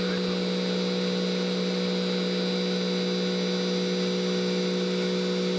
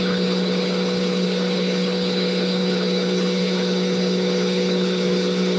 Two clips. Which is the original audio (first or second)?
first